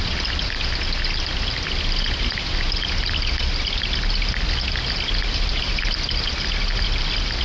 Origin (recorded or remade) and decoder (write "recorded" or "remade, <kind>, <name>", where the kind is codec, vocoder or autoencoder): recorded